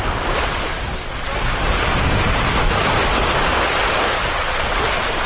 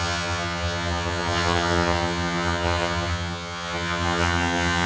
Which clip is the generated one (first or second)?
second